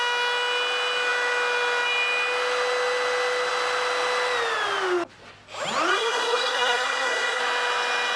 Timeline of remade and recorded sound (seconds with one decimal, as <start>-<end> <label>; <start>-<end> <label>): 0.0-5.9 recorded; 5.9-7.4 remade; 7.4-8.2 recorded